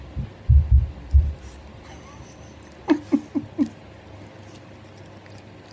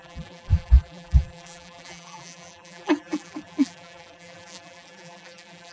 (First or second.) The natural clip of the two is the first